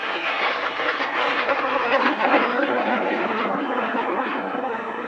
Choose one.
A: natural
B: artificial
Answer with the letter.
B